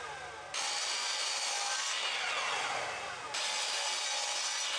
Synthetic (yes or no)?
no